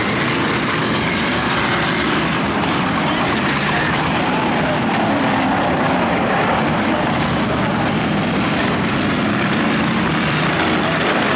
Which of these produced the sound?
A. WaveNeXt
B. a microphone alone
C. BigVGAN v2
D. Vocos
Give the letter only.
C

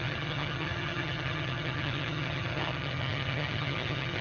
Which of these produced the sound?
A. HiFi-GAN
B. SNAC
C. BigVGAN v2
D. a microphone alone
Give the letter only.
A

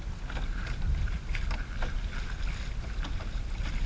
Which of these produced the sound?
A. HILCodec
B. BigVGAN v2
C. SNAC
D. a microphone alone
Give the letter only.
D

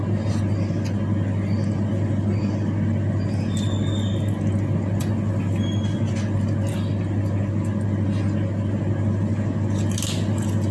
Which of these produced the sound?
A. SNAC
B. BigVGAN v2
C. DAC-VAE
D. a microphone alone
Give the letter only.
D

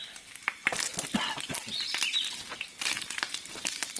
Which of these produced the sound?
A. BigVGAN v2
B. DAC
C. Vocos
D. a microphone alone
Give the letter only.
D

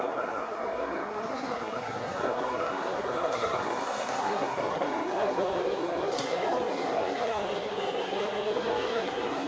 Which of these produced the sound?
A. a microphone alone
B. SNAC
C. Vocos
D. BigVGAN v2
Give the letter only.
B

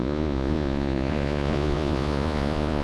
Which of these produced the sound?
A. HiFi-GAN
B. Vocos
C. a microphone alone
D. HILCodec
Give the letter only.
B